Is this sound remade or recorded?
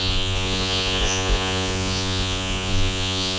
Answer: remade